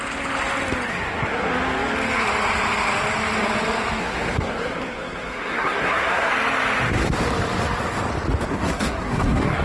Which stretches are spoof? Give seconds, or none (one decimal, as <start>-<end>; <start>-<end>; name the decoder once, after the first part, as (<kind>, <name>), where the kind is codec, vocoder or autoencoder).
0.9-1.5 (codec, SNAC); 4.0-6.3; 8.5-9.6